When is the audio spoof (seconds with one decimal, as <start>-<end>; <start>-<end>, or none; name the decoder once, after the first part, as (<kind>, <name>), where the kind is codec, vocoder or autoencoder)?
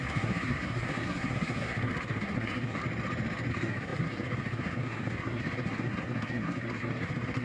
0.0-2.8 (codec, SNAC); 3.5-7.4